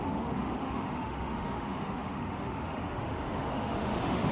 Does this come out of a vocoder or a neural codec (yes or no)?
yes